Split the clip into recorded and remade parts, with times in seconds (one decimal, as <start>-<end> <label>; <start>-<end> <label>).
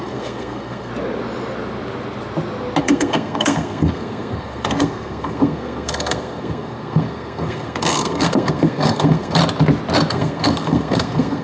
0.0-0.9 remade; 0.9-2.8 recorded; 2.8-9.4 remade; 9.4-10.1 recorded; 10.1-11.4 remade